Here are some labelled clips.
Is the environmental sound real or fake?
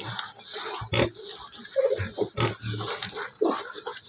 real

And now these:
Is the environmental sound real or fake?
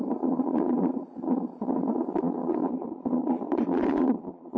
fake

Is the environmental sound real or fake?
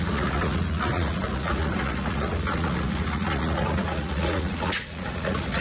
fake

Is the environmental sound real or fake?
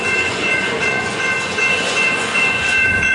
fake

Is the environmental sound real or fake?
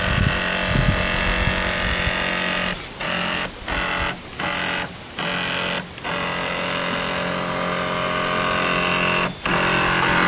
real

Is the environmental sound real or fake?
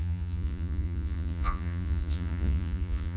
fake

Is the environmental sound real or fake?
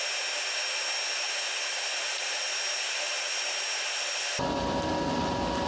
real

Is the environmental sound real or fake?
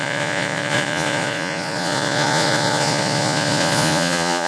fake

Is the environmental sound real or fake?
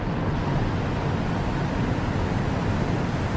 real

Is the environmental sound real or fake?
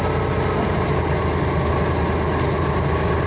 real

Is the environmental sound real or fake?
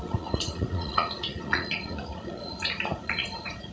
fake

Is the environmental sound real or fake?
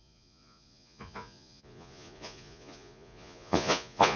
fake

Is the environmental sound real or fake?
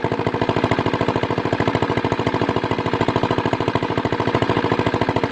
real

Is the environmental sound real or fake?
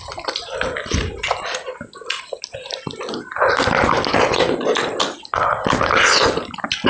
real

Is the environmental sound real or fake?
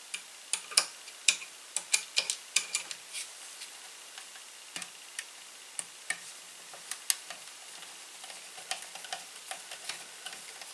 real